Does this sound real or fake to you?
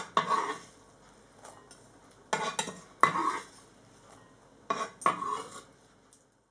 real